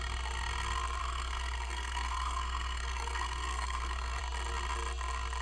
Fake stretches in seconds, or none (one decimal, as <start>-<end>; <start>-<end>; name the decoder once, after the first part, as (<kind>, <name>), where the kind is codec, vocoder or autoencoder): 1.0-4.2 (codec, SNAC)